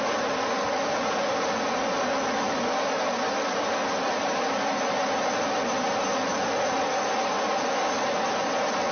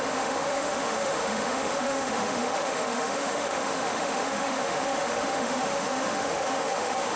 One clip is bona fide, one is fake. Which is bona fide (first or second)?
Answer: first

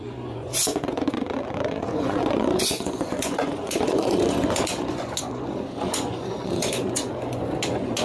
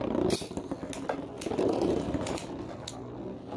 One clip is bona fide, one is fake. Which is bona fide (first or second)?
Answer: second